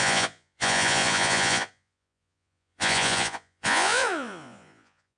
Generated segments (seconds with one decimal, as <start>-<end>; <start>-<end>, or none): 0.0-5.2